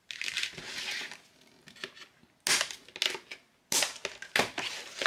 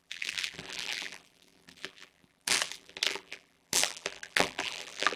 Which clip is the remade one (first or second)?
second